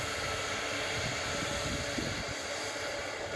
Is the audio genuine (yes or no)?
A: yes